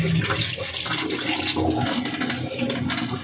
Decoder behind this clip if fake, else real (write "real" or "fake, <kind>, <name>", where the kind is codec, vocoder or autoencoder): real